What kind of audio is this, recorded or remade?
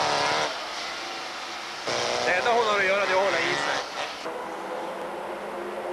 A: recorded